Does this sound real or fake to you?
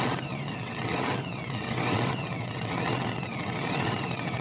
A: fake